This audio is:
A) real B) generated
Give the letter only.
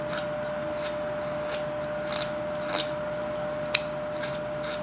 A